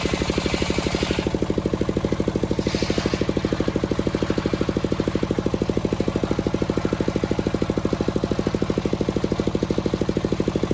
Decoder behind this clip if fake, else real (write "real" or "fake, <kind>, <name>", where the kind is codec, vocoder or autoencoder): real